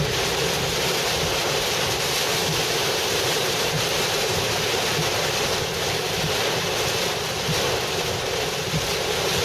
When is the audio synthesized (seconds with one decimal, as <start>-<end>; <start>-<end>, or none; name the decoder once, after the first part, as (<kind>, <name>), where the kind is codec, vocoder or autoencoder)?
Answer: 0.0-9.4 (vocoder, BigVGAN v2)